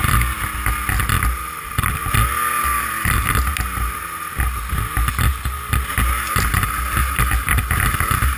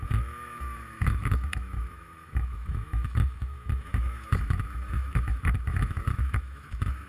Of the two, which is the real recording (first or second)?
first